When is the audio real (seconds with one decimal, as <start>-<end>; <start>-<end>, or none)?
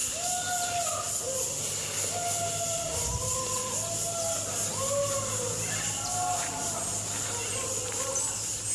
0.0-8.7